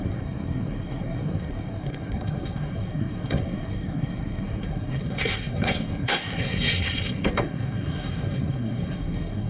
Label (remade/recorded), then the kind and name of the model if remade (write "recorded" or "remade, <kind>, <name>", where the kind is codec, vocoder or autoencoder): remade, codec, SNAC